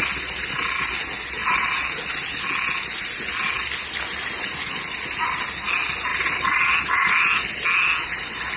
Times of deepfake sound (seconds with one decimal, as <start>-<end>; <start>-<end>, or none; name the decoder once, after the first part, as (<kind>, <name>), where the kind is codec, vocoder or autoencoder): none